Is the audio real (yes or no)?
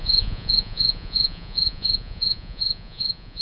no